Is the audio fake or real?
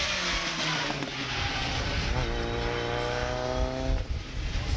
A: real